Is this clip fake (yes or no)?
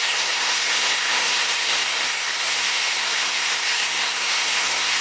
yes